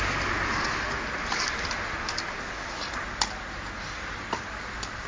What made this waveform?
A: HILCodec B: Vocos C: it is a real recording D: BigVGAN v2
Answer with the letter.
C